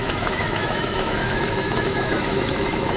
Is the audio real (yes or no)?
no